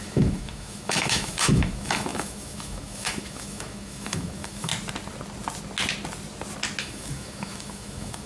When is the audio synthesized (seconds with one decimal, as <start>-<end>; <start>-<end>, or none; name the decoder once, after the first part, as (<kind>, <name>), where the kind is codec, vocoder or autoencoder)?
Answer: 0.0-4.7 (autoencoder, DAC-VAE); 6.8-8.3